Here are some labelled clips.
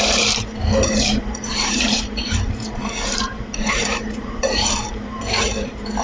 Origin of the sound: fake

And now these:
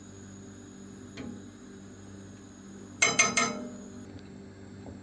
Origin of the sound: real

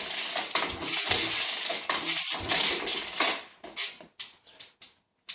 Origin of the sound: real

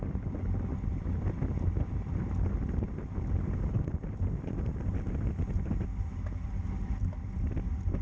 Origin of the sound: real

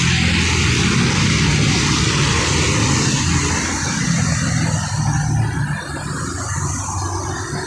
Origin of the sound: real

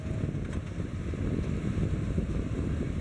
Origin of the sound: fake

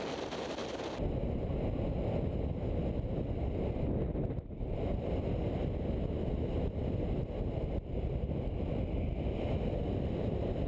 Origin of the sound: real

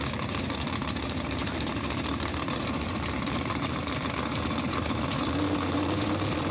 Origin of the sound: fake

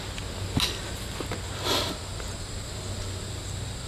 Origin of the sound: real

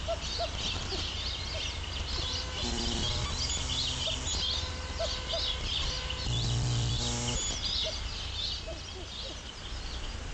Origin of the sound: real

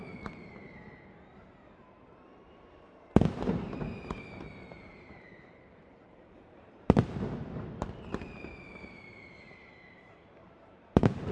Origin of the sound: fake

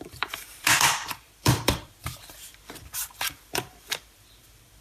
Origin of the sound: fake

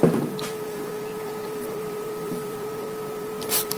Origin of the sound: fake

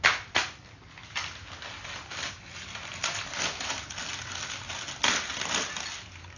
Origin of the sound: real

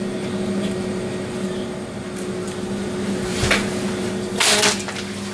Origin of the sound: real